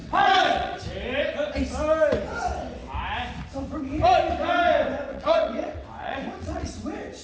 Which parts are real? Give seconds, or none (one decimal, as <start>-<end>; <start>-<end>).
0.8-5.1; 6.7-7.2